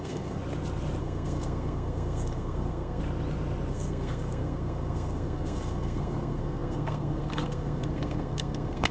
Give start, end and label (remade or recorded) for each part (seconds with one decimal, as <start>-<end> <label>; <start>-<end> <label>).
0.0-0.4 remade; 0.4-1.0 recorded; 1.0-3.0 remade; 3.0-3.7 recorded; 3.7-8.9 remade